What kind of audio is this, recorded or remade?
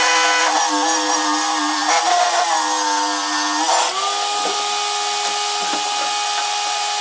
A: recorded